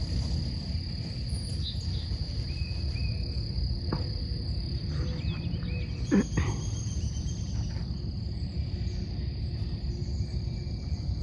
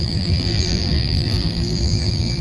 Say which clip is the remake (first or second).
second